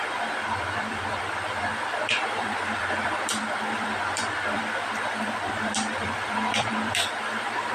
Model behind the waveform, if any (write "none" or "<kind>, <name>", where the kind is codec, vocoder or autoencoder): vocoder, BigVGAN v2